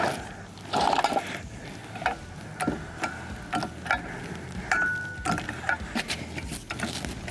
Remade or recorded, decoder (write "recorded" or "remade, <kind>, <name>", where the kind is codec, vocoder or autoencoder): recorded